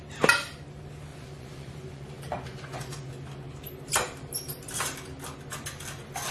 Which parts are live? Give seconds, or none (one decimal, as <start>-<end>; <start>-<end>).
0.0-1.1; 3.1-6.3